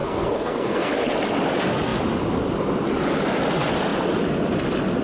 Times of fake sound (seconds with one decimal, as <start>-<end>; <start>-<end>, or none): 0.0-0.9